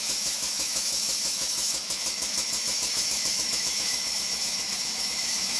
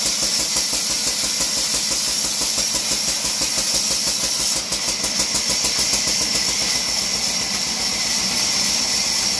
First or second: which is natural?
second